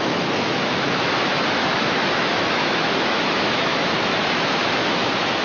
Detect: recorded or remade remade